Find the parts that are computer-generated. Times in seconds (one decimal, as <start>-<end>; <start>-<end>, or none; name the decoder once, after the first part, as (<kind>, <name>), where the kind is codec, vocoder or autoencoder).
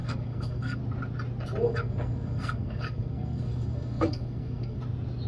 0.0-0.8 (codec, SNAC); 1.6-4.8